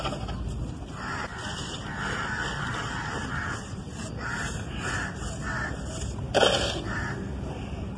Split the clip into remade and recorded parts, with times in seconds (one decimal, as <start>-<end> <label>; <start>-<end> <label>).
0.0-8.0 remade